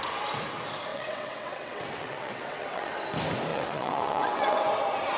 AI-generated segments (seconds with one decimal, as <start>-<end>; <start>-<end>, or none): 0.9-3.0; 3.5-4.6